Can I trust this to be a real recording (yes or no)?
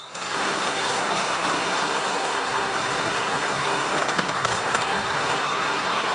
no